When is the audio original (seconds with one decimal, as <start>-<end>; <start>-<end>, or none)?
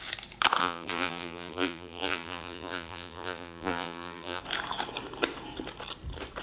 0.0-0.6; 4.4-6.4